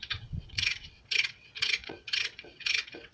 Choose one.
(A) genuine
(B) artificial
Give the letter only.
B